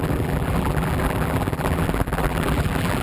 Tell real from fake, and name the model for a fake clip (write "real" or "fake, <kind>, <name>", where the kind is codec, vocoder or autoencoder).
fake, vocoder, BigVGAN v2